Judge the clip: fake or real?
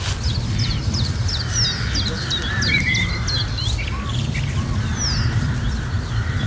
real